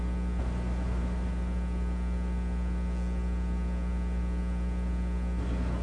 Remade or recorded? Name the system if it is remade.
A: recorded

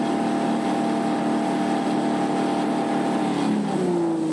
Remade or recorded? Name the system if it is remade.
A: recorded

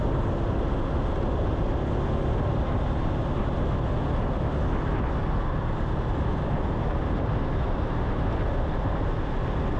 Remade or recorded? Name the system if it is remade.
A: recorded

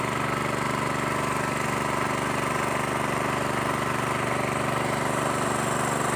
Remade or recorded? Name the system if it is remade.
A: recorded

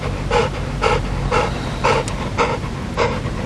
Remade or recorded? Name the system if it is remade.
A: remade, vocoder, BigVGAN v2